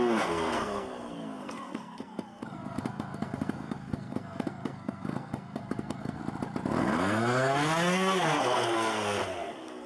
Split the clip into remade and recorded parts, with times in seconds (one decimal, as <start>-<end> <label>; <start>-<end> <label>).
0.0-6.2 remade; 6.2-6.8 recorded; 6.8-9.9 remade